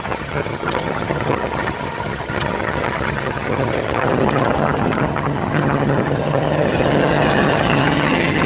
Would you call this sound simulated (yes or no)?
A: yes